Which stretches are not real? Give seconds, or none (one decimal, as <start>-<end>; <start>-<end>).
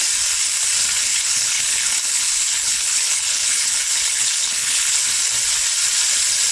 1.1-5.0